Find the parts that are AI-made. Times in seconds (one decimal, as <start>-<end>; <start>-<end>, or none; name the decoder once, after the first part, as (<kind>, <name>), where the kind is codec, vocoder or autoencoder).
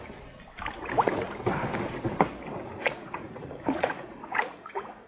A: 2.7-5.1 (vocoder, Vocos)